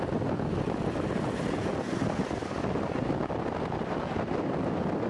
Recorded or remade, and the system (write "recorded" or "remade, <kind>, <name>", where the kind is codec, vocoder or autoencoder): recorded